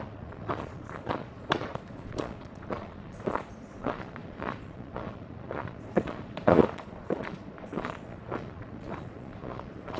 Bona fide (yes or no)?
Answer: no